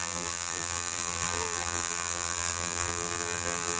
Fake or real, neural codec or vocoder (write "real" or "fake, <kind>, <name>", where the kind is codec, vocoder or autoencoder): fake, vocoder, BigVGAN v2